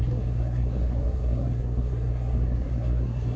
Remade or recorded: remade